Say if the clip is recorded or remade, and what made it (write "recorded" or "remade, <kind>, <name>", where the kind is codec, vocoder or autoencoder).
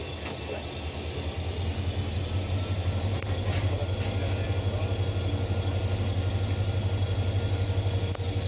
recorded